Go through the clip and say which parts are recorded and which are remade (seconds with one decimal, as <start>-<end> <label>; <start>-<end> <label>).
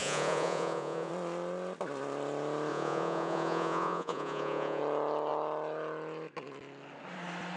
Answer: 0.0-1.1 remade; 1.1-2.7 recorded; 2.7-4.8 remade; 4.8-7.6 recorded